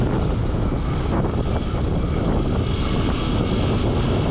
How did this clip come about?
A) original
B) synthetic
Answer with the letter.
A